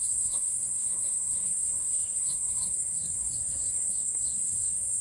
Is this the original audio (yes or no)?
no